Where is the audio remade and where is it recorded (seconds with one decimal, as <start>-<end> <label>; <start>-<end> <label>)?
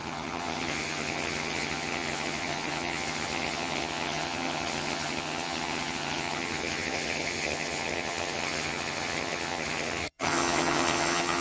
0.0-11.4 remade